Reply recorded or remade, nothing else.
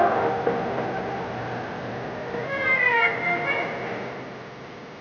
recorded